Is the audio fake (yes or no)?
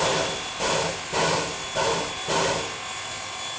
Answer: no